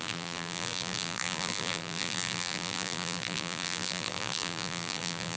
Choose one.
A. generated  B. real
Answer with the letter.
A